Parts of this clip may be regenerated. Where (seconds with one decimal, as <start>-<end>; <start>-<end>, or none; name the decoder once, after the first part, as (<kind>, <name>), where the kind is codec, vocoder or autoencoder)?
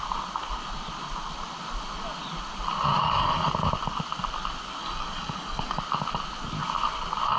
2.9-3.5 (codec, DAC); 4.8-5.8